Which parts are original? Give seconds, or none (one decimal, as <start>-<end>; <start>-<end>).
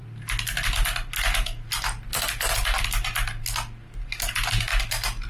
0.0-5.3